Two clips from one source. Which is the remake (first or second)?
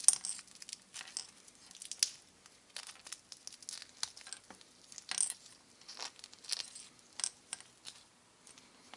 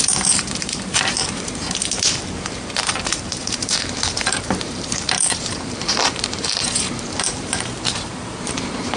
second